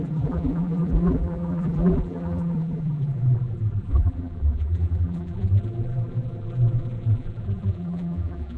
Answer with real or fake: fake